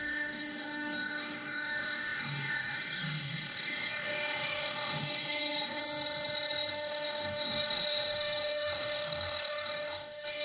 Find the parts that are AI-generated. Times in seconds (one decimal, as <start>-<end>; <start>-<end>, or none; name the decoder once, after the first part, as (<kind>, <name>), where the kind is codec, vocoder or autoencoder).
0.0-5.8 (codec, DAC); 6.7-10.4